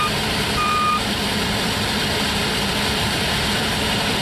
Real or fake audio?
fake